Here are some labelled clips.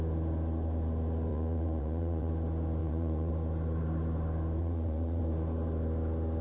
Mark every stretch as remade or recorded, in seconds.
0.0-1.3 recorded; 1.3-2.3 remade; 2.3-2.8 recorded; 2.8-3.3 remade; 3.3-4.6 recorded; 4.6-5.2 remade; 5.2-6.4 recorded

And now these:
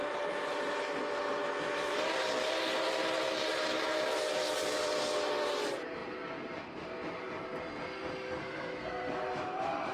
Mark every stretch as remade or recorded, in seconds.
0.0-8.4 recorded; 8.4-9.2 remade; 9.2-9.9 recorded

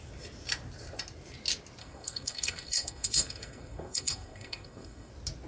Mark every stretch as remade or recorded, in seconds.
0.0-1.8 recorded; 1.8-5.1 remade; 5.1-5.5 recorded

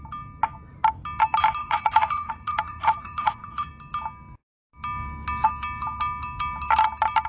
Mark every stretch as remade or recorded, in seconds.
0.0-1.6 recorded; 1.6-3.7 remade; 3.7-7.3 recorded

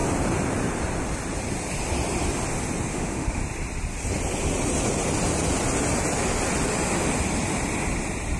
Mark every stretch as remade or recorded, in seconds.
0.0-2.9 recorded; 2.9-3.4 remade; 3.4-8.4 recorded

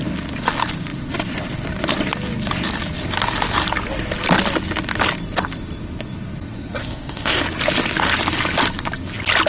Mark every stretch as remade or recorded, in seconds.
0.0-6.8 recorded; 6.8-7.4 remade; 7.4-9.5 recorded

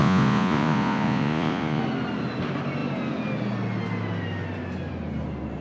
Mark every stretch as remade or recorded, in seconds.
0.0-1.8 remade; 1.8-5.6 recorded

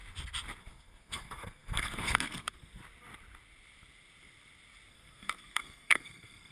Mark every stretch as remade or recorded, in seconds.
0.0-0.6 recorded; 0.6-2.8 remade; 2.8-4.9 recorded; 4.9-6.5 remade